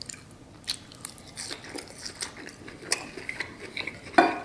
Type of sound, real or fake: real